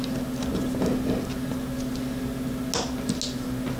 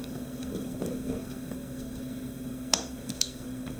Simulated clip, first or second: second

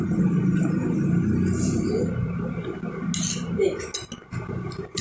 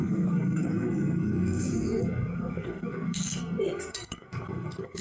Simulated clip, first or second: second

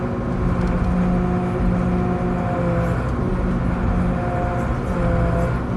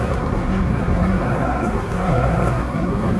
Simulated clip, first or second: second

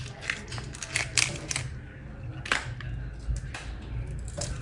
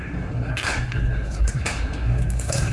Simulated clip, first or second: second